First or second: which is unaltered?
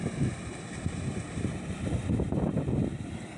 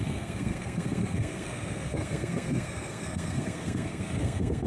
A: first